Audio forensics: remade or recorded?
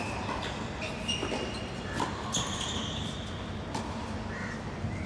recorded